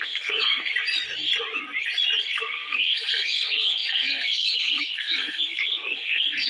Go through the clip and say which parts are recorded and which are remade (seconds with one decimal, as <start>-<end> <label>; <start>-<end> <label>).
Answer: 0.0-0.7 remade; 0.7-2.2 recorded; 2.2-6.5 remade